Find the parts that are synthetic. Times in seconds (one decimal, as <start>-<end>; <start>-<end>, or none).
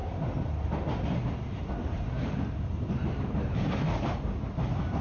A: 1.8-5.0